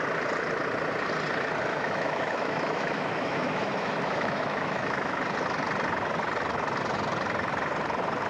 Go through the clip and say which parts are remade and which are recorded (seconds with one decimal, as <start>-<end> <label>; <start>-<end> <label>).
0.0-1.7 recorded; 1.7-5.2 remade; 5.2-8.3 recorded